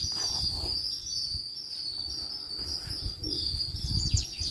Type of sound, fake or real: real